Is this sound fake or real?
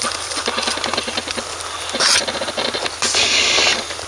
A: real